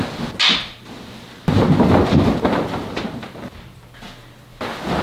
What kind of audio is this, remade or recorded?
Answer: recorded